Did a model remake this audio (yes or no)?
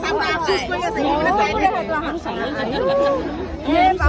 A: no